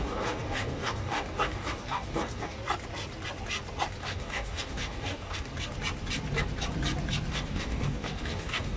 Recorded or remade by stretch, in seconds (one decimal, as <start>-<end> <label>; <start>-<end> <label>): 0.0-2.6 remade; 2.6-4.0 recorded; 4.0-5.5 remade; 5.5-7.3 recorded; 7.3-8.8 remade